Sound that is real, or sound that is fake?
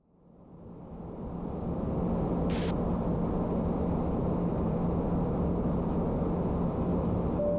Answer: real